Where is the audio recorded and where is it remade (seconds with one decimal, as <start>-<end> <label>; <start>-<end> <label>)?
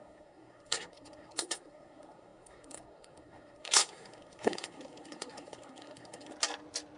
0.0-6.3 remade; 6.3-7.0 recorded